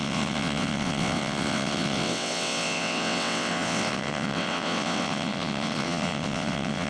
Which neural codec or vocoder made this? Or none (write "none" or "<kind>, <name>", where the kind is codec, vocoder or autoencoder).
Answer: vocoder, WaveNeXt